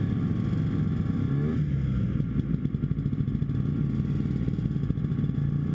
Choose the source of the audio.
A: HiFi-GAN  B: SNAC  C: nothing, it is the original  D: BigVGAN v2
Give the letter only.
C